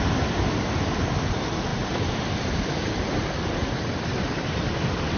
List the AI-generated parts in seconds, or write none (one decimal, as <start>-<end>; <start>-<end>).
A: none